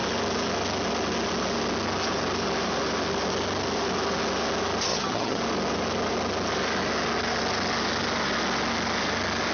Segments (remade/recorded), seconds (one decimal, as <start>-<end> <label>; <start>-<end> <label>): 0.0-4.9 recorded; 4.9-5.4 remade; 5.4-9.5 recorded